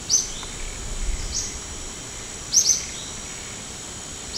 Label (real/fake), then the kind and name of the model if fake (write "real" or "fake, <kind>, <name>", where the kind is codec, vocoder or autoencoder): real